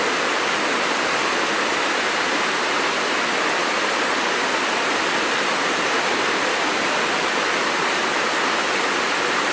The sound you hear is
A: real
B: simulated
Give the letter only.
A